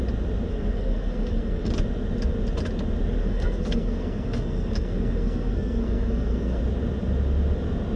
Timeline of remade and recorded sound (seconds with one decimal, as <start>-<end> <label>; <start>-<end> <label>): 0.0-0.5 recorded; 0.5-1.7 remade; 1.7-3.2 recorded; 3.2-6.6 remade; 6.6-8.0 recorded